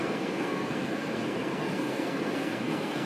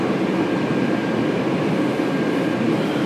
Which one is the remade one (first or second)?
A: first